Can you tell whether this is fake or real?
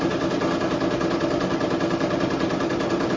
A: real